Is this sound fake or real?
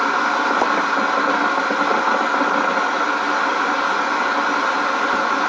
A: real